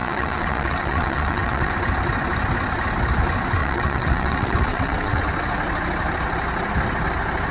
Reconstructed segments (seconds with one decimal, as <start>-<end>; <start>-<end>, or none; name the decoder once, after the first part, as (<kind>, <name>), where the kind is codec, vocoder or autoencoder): 0.0-1.7 (vocoder, WaveNeXt); 3.6-5.2